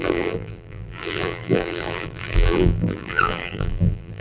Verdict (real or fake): fake